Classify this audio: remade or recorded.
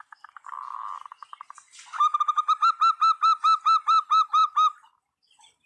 recorded